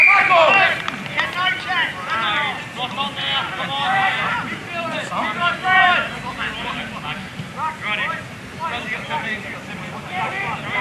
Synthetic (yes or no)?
yes